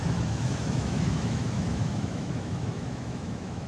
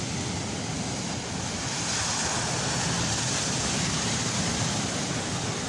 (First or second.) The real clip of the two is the second